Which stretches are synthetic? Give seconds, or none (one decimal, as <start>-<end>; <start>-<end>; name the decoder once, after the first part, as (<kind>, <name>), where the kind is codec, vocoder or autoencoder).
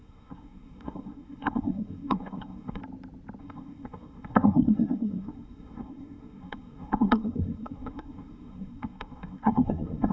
0.0-2.8 (codec, SNAC); 3.4-10.1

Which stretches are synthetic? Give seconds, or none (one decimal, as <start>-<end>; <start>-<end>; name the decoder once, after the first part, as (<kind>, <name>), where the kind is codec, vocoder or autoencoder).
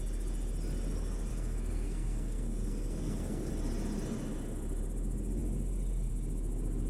1.3-3.5 (codec, SNAC)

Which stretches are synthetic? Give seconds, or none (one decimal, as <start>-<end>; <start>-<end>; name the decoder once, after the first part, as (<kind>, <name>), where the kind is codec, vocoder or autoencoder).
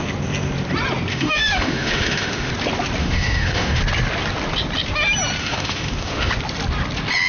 1.1-2.5 (autoencoder, DAC-VAE); 3.0-3.8; 5.4-6.3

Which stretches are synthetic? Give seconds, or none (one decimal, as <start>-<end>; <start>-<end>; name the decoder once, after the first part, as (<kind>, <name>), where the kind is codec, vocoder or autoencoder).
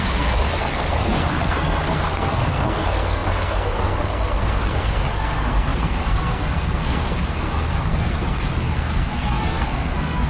0.0-10.3 (codec, SNAC)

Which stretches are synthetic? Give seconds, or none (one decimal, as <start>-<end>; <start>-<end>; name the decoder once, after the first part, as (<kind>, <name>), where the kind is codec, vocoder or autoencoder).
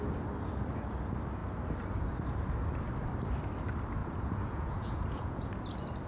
4.0-5.5 (vocoder, Vocos)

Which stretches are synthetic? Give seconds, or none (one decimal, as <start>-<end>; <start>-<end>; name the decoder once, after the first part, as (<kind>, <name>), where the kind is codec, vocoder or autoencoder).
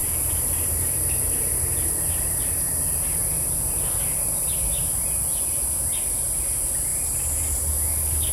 0.0-1.9 (vocoder, BigVGAN v2)